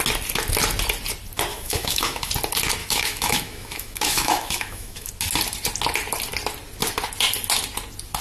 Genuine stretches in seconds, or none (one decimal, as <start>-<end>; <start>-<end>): 0.0-1.5; 2.3-2.8; 5.1-8.2